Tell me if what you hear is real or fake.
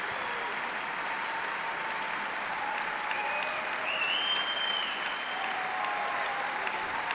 real